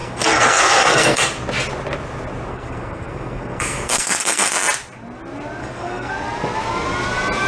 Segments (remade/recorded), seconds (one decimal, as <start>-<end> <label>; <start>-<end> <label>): 0.0-1.2 remade; 1.2-2.5 recorded; 2.5-4.5 remade; 4.5-5.6 recorded; 5.6-6.1 remade; 6.1-7.5 recorded